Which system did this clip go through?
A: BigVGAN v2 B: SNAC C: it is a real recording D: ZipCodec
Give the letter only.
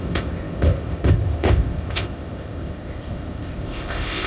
D